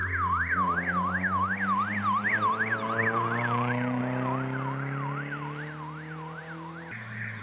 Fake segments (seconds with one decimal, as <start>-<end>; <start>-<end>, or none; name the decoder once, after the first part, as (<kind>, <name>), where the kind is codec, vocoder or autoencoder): none

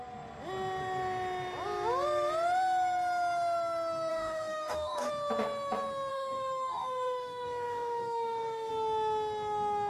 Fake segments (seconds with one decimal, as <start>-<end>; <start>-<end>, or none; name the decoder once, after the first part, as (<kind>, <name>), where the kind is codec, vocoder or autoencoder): 4.1-5.1 (codec, DAC); 6.1-8.7

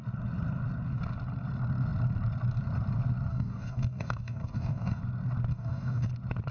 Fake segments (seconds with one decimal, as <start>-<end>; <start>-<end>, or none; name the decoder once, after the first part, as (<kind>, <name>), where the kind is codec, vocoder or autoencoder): 3.3-5.0 (codec, DAC); 5.5-6.1

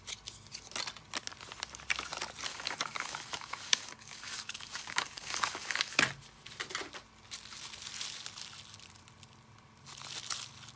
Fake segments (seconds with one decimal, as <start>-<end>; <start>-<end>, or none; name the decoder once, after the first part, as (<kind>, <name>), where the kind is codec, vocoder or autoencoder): 2.5-6.0 (codec, DAC)

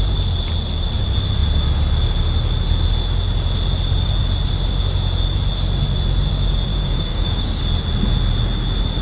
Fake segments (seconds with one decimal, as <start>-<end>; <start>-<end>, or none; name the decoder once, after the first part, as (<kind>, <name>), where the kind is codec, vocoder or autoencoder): 6.7-7.6 (codec, DAC)

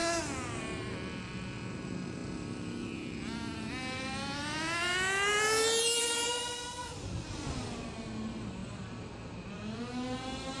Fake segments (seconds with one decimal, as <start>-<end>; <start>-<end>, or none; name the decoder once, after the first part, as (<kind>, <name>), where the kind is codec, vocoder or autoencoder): none

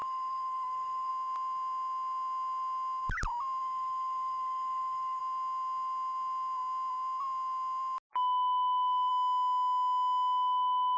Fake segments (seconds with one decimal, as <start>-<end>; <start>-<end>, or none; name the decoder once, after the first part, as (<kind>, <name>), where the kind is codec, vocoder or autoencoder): 0.0-1.1 (codec, DAC); 3.6-5.2